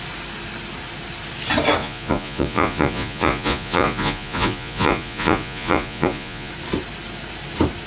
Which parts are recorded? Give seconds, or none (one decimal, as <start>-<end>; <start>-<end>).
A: 0.0-1.8; 6.5-7.9